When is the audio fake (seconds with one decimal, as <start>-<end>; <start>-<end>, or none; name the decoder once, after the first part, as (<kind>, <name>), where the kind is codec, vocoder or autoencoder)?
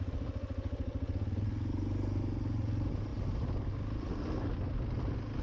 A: none